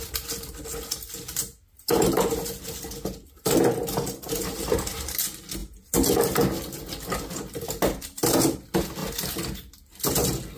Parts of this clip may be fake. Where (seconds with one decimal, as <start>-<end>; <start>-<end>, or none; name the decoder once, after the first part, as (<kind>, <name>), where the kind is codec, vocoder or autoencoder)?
none